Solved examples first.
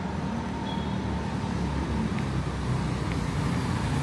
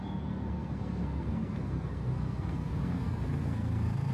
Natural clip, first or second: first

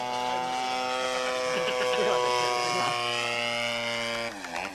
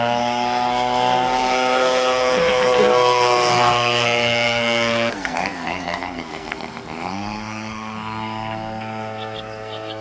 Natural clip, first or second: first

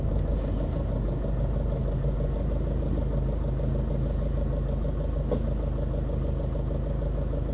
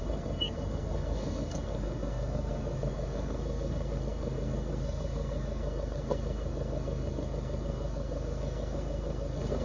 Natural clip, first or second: first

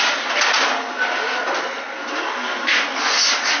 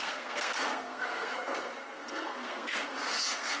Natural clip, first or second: first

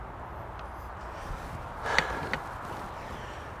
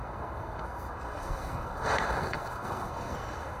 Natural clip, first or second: first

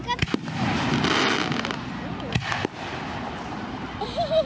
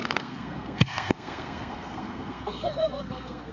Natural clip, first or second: first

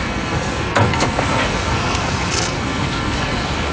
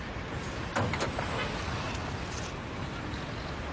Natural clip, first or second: second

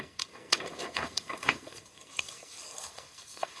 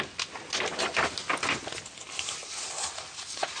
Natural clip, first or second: second